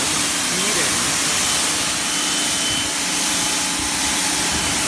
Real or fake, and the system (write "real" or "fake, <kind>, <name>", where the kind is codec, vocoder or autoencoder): real